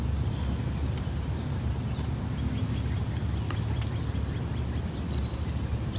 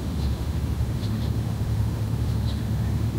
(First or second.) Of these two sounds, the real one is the first